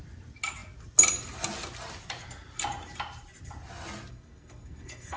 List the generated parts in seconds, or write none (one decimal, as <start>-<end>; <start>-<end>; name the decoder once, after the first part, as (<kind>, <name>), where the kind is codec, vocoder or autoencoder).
4.1-5.2 (codec, SNAC)